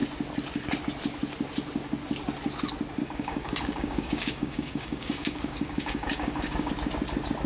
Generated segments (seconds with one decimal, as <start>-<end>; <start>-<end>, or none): 3.0-6.7